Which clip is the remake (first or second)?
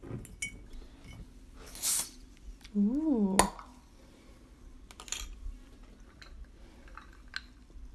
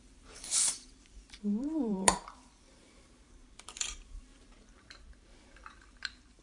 second